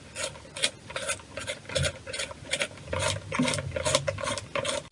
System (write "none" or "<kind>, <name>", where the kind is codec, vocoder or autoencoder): none